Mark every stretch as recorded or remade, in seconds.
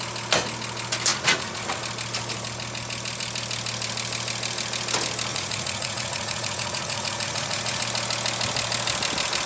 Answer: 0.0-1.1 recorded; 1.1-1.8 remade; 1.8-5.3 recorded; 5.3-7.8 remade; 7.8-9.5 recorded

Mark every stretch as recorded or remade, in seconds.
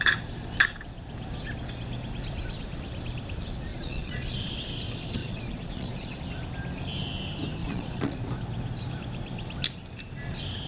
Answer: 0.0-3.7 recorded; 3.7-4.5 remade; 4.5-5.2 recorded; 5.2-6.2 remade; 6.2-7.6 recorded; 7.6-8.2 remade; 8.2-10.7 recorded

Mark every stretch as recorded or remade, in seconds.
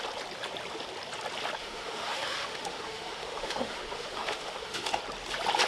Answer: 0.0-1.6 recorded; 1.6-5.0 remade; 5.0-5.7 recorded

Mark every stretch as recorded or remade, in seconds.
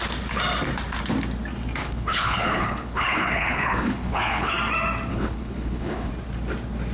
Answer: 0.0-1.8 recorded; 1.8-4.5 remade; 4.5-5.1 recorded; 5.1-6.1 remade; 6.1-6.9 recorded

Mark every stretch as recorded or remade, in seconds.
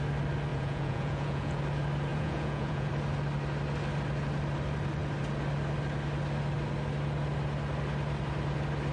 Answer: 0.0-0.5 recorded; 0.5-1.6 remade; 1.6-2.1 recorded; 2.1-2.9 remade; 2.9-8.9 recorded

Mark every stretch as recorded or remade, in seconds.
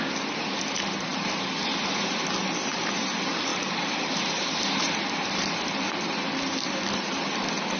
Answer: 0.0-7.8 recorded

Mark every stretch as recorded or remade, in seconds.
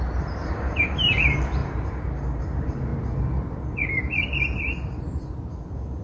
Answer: 0.0-1.6 remade; 1.6-2.4 recorded; 2.4-2.9 remade; 2.9-6.0 recorded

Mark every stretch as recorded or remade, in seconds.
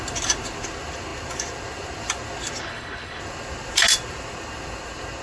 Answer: 0.0-2.6 recorded; 2.6-3.2 remade; 3.2-5.2 recorded